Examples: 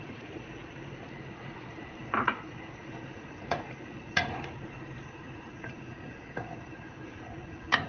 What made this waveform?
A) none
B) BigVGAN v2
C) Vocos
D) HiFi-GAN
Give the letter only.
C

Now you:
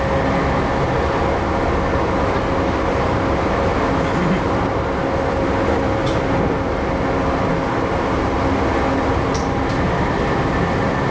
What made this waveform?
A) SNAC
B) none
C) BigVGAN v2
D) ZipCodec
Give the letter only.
B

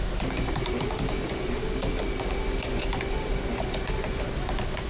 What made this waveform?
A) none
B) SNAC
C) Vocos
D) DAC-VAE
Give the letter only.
A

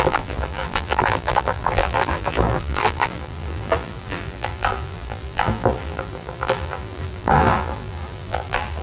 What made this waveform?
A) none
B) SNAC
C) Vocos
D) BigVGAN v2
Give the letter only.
D